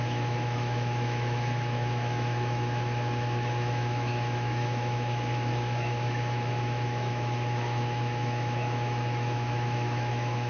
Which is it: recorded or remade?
remade